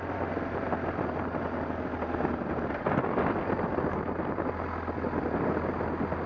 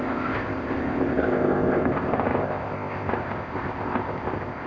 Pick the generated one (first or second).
second